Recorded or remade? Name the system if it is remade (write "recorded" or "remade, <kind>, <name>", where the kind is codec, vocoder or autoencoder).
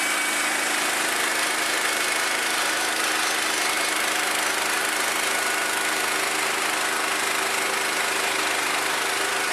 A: recorded